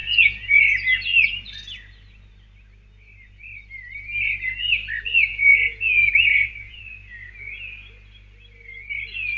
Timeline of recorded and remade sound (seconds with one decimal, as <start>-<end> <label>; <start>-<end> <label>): 0.0-0.6 remade; 0.6-5.3 recorded; 5.3-6.8 remade; 6.8-9.4 recorded

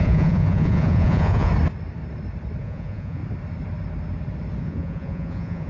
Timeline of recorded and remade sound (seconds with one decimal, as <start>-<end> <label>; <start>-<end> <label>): 0.0-1.5 remade; 1.5-2.6 recorded; 2.6-3.2 remade; 3.2-4.6 recorded; 4.6-5.7 remade